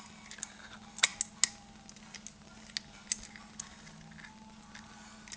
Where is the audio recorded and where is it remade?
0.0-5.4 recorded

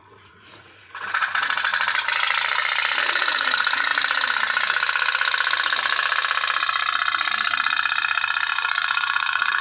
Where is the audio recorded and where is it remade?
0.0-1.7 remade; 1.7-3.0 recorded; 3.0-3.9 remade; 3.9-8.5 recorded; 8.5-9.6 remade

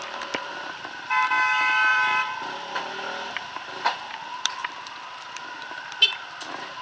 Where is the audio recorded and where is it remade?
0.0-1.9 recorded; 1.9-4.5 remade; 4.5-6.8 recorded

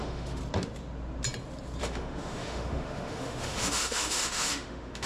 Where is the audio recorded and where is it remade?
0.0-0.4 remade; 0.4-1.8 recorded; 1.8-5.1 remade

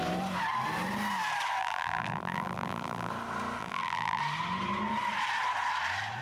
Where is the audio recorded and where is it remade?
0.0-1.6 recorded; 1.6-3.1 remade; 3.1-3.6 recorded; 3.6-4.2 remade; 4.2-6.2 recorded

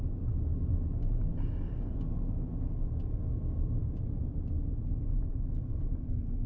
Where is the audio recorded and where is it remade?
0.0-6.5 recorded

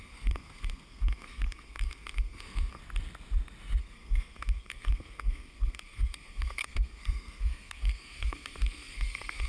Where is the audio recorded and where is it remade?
0.0-2.8 remade; 2.8-3.8 recorded; 3.8-9.5 remade

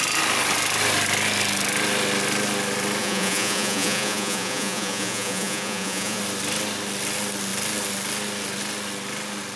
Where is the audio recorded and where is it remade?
0.0-3.0 recorded; 3.0-6.2 remade; 6.2-9.6 recorded